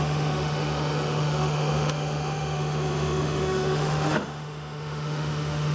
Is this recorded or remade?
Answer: remade